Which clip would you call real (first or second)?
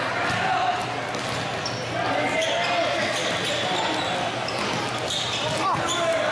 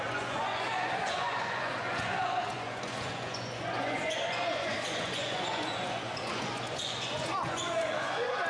first